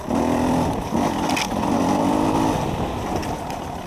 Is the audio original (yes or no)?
yes